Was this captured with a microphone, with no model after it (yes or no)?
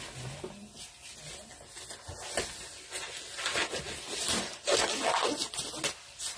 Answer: yes